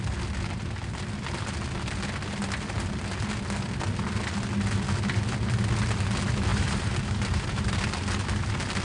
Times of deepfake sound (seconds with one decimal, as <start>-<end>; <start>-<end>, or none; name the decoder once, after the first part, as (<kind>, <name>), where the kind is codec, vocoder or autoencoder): 6.5-8.0 (vocoder, BigVGAN v2)